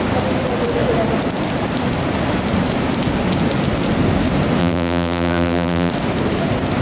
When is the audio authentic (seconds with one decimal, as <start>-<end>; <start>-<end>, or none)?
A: 0.0-4.6; 5.9-6.8